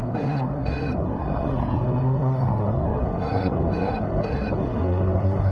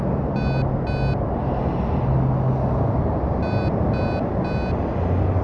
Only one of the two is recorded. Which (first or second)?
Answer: second